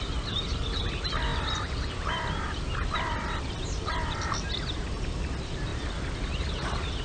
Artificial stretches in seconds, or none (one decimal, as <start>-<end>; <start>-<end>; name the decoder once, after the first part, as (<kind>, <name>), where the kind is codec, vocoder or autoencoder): 1.3-5.0 (vocoder, BigVGAN v2); 5.7-7.0